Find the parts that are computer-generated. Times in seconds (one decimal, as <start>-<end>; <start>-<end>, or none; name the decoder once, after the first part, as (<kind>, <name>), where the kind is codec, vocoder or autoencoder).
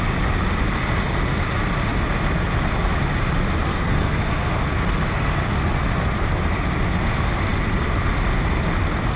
3.7-4.5 (codec, SNAC)